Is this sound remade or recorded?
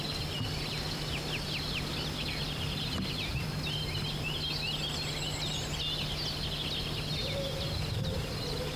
recorded